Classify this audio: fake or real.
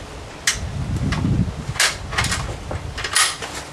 real